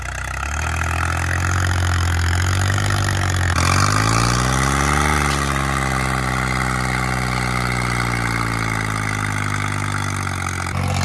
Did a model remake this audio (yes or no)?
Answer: no